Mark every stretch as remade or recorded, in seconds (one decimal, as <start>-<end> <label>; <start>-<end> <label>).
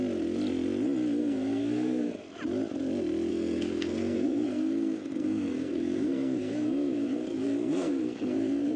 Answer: 0.0-1.2 recorded; 1.2-2.1 remade; 2.1-3.3 recorded; 3.3-8.8 remade